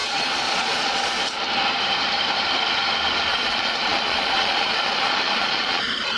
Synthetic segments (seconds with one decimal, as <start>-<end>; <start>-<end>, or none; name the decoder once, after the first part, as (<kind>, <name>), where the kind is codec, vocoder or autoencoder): 0.0-1.2 (vocoder, Vocos); 3.3-5.8